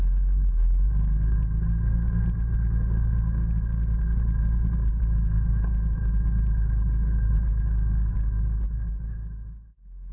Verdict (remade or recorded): remade